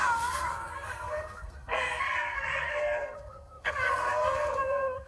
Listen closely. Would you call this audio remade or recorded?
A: remade